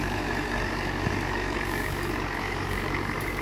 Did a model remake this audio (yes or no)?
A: yes